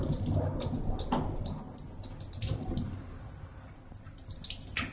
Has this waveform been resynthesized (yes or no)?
no